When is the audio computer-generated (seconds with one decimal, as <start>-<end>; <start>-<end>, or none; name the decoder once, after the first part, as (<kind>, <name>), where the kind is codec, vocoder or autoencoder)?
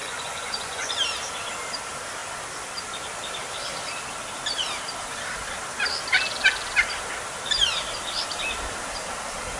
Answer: 0.0-0.9 (vocoder, Vocos)